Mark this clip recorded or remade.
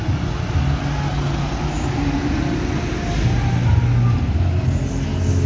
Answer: recorded